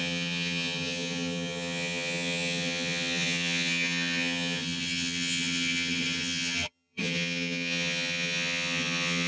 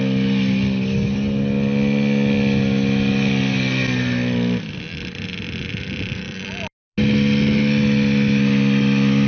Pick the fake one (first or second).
first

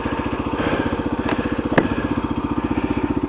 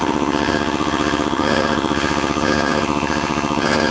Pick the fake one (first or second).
second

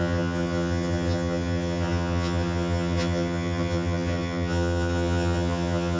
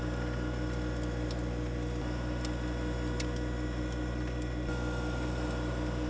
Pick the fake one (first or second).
first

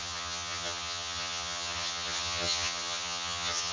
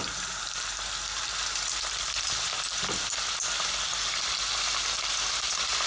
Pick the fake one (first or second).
first